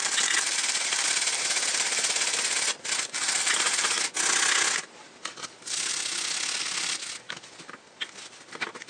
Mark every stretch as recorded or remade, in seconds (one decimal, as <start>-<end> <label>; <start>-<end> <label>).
0.0-8.9 recorded